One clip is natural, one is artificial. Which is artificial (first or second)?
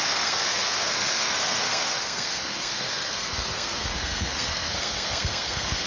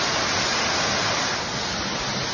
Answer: first